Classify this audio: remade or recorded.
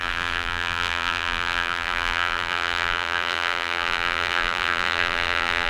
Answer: remade